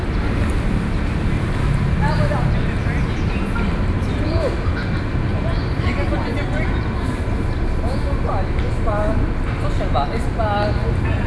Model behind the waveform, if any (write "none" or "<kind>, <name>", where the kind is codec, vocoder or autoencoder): none